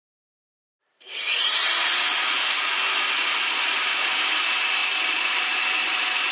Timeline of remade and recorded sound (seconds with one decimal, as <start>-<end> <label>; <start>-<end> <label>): 0.0-1.7 remade; 1.7-4.8 recorded; 4.8-6.3 remade